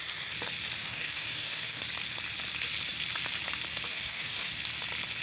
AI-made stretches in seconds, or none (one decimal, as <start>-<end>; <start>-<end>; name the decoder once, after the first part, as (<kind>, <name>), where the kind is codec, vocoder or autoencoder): 0.8-1.8 (codec, DAC); 3.9-4.5